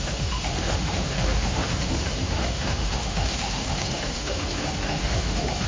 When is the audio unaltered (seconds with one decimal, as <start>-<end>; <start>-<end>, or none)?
none